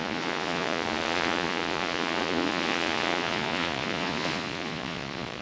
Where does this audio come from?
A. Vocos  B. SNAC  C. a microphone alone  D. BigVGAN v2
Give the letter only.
A